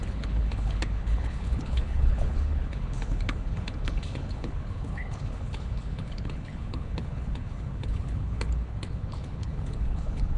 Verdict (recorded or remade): remade